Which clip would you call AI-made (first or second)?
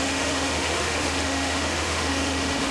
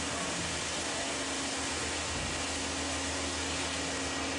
first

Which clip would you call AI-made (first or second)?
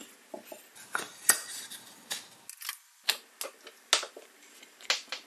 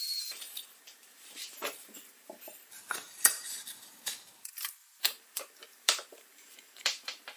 second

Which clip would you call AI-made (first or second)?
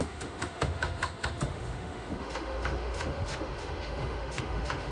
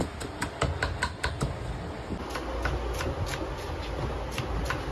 first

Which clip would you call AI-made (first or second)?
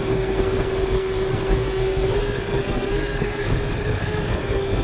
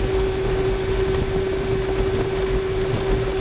first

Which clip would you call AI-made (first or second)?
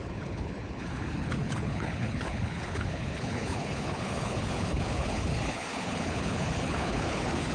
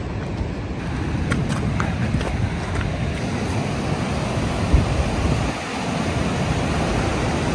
first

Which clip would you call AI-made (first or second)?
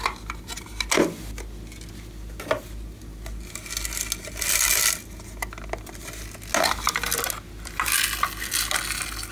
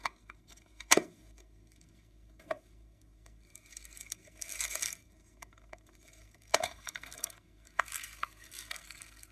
second